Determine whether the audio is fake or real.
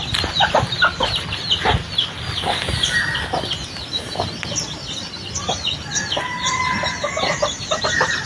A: real